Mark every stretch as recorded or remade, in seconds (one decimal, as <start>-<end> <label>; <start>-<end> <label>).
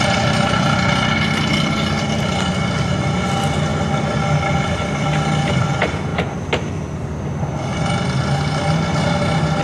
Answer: 0.0-9.6 recorded